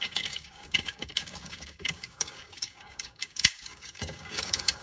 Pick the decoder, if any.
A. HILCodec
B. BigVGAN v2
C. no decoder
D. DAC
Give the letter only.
D